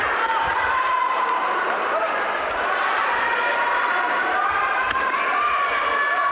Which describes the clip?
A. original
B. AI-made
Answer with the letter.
B